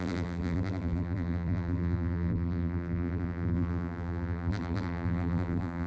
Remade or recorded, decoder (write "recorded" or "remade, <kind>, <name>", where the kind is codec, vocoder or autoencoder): remade, vocoder, BigVGAN v2